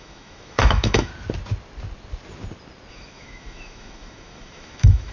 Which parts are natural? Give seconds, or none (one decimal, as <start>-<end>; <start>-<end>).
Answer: 1.1-2.9